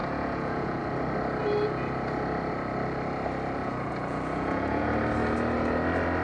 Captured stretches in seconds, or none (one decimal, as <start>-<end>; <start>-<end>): 0.8-3.6; 4.9-6.2